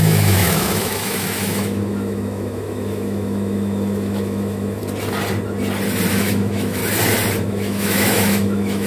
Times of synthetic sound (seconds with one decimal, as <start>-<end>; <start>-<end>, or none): 0.0-4.8; 6.1-6.8; 7.4-8.9